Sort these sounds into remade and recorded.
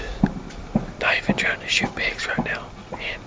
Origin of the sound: recorded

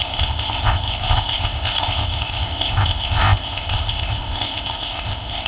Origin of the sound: remade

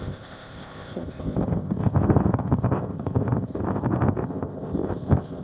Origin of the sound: remade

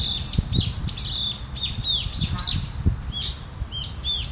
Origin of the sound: recorded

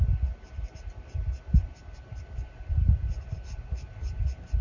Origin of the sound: recorded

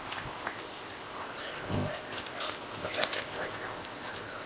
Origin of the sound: remade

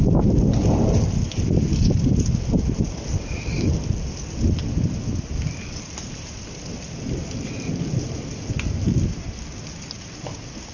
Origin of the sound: recorded